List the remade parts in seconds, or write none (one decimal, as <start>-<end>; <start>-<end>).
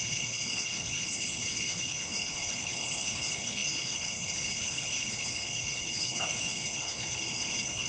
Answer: 0.0-7.9